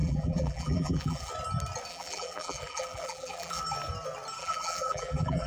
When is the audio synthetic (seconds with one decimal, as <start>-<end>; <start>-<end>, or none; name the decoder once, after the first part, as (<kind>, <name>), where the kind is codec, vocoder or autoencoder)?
0.0-1.3 (vocoder, BigVGAN v2); 1.9-3.6; 4.4-5.5